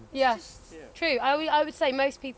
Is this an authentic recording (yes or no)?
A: yes